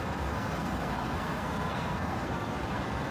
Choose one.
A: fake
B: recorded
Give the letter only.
A